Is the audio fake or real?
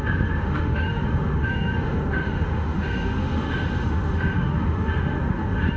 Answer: fake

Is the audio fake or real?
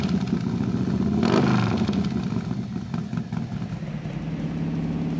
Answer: real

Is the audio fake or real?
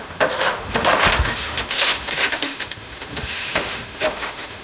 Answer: fake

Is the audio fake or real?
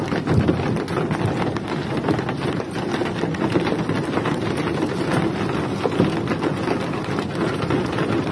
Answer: real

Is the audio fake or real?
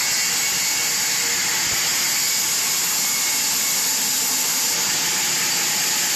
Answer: real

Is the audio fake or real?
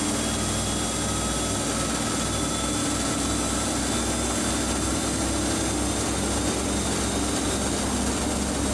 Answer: real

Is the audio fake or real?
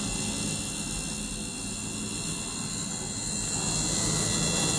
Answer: real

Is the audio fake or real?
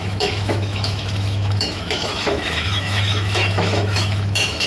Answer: fake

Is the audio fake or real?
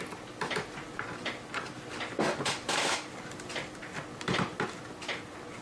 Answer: real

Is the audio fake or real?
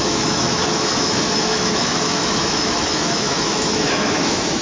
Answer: fake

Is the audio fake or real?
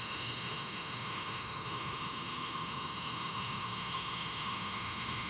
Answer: fake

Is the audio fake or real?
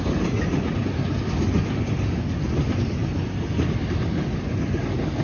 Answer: real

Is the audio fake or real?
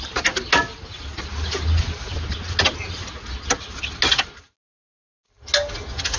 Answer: real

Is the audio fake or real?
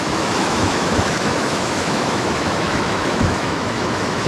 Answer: fake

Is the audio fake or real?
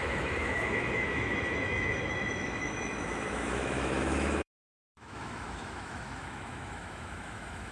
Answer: fake